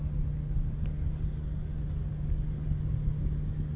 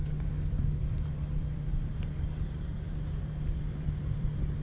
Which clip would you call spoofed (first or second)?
second